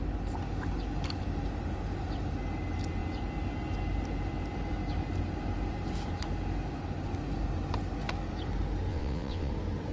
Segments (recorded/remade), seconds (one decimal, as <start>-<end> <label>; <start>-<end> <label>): 0.0-8.9 recorded; 8.9-9.5 remade; 9.5-9.9 recorded